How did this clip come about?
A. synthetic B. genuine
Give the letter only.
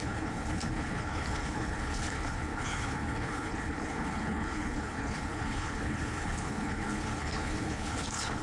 A